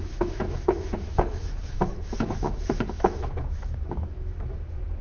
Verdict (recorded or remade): remade